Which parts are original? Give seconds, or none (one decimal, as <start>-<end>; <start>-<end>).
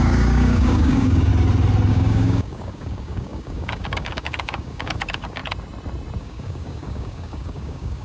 1.3-1.9; 5.4-6.2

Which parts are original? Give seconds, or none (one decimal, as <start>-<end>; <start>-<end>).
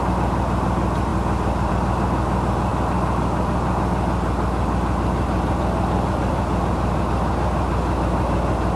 0.0-8.8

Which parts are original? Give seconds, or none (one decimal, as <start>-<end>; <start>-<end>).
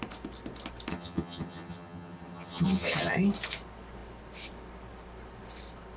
0.0-0.9; 3.1-6.0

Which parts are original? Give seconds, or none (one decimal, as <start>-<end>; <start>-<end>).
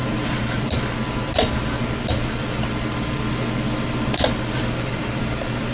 0.0-5.7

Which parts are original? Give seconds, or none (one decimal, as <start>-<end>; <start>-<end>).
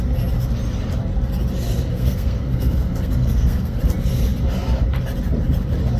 0.0-1.9; 3.8-6.0